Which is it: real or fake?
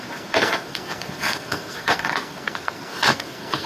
fake